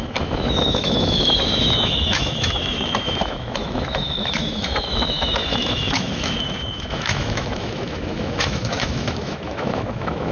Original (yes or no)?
no